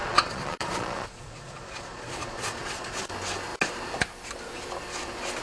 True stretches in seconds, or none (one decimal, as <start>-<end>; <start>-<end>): 3.1-5.4